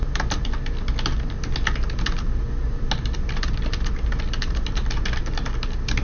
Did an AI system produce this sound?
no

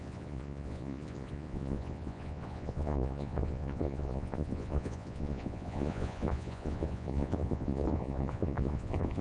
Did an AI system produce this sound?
yes